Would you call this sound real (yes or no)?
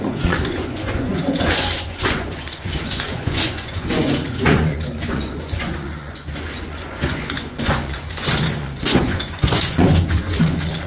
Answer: no